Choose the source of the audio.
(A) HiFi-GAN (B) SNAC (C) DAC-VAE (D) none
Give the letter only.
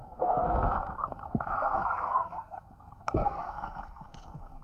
B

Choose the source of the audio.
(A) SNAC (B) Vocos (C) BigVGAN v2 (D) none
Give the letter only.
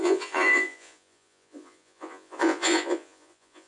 B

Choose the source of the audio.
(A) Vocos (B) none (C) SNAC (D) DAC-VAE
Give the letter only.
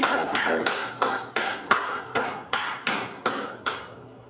C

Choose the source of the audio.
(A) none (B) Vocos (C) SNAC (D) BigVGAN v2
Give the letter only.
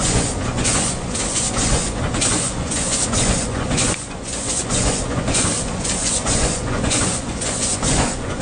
B